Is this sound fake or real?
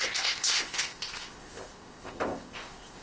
fake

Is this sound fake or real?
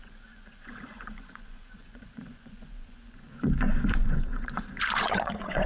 fake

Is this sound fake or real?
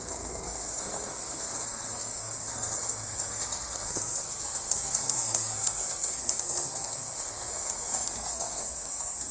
fake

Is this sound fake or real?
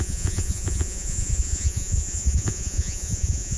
fake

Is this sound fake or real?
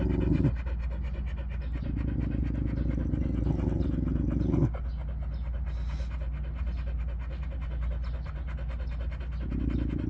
real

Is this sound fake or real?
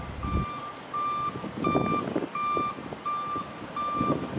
real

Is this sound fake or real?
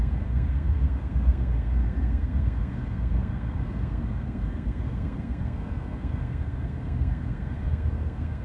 fake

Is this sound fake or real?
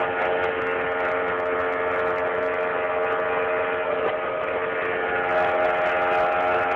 real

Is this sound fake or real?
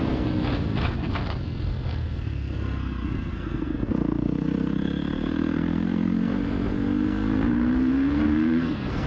fake